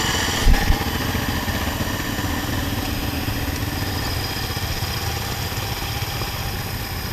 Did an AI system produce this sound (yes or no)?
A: no